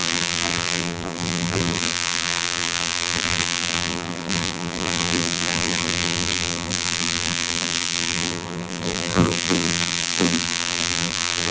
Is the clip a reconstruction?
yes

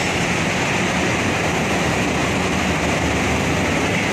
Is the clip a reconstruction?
no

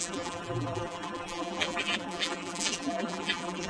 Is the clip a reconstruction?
yes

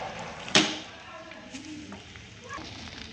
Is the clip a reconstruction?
yes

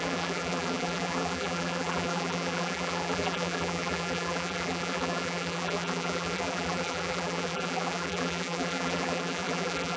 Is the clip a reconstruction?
yes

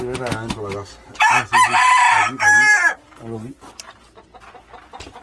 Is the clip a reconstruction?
no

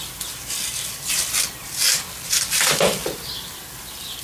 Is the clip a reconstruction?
yes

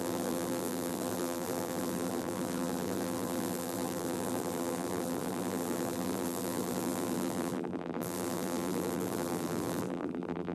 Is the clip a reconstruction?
yes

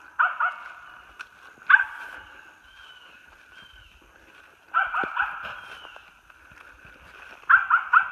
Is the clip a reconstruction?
no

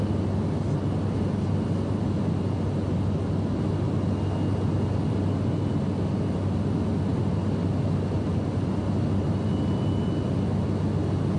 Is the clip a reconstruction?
no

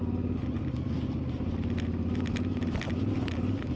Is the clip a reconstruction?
no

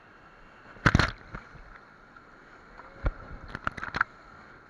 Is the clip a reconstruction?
no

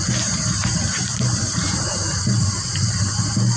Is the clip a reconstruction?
yes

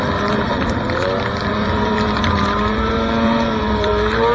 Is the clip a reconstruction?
yes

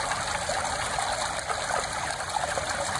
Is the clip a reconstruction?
no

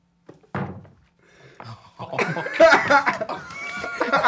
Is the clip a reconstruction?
no